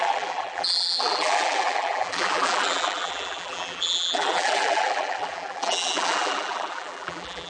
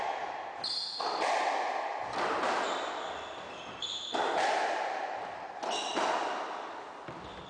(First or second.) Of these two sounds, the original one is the second